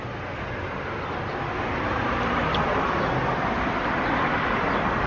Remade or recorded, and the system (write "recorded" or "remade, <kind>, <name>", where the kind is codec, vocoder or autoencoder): recorded